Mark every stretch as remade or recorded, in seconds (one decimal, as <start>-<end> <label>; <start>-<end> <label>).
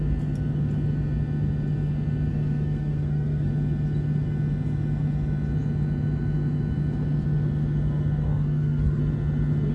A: 0.0-2.3 recorded; 2.3-3.5 remade; 3.5-8.2 recorded; 8.2-9.0 remade; 9.0-9.7 recorded